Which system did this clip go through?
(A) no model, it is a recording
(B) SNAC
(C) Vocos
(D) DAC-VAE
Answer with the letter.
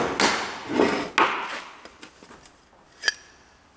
A